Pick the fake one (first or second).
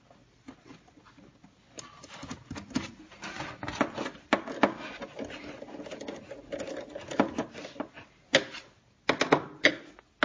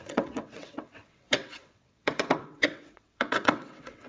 second